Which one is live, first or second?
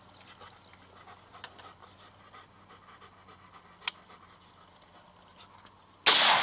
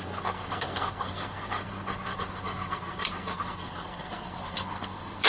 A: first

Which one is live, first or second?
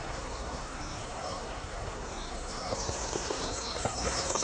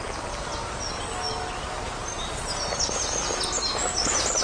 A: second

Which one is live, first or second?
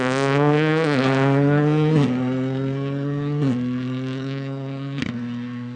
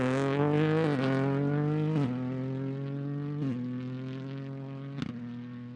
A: second